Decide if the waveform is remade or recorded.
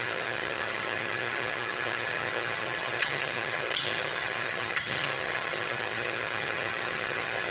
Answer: remade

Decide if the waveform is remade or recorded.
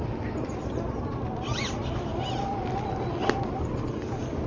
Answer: recorded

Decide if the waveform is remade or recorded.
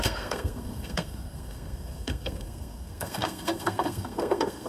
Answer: remade